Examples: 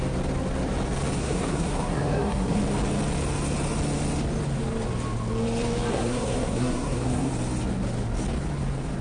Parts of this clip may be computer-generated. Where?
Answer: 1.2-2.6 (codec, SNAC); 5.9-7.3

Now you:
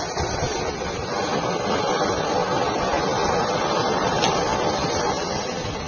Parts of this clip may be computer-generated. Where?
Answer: none

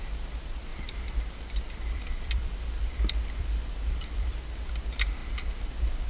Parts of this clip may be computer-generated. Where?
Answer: 0.7-4.4 (vocoder, BigVGAN v2)

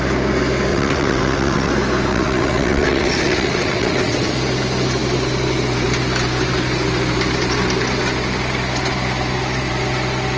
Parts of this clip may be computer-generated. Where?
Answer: 0.7-1.7 (vocoder, WaveNeXt); 2.1-4.3

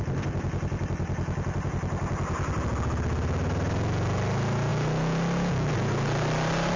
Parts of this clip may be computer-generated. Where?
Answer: none